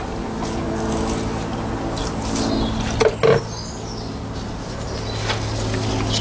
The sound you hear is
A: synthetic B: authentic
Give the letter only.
B